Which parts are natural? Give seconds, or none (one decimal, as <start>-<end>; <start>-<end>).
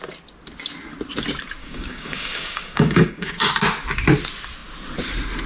0.0-1.6; 3.5-5.5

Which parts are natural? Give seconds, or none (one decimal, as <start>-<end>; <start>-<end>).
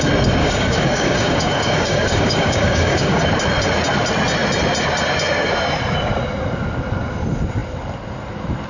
0.0-0.4; 3.2-8.7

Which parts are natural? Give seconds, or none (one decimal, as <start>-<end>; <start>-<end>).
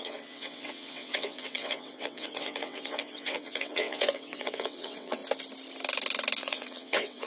5.2-6.4